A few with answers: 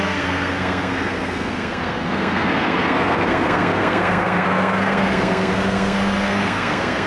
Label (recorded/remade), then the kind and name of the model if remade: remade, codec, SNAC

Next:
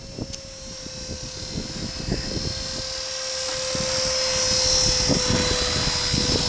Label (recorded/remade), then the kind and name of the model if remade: recorded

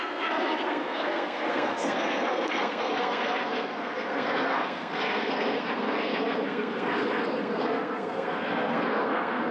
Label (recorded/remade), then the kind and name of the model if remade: remade, codec, SNAC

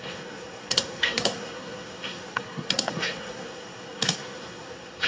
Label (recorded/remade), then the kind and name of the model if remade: remade, codec, SNAC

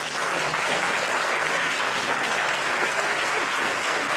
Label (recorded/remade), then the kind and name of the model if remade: remade, codec, SNAC